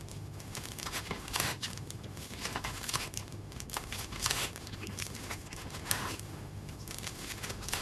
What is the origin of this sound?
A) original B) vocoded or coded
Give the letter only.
B